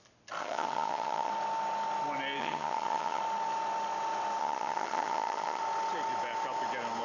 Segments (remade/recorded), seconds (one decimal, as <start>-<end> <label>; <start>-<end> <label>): 0.0-0.4 recorded; 0.4-1.3 remade; 1.3-2.4 recorded; 2.4-3.2 remade; 3.2-4.4 recorded; 4.4-5.6 remade; 5.6-7.0 recorded